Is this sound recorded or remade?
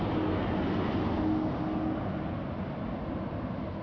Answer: recorded